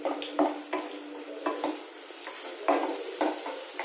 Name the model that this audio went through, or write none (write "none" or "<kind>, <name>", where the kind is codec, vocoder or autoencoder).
none